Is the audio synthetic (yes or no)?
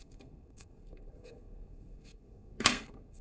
yes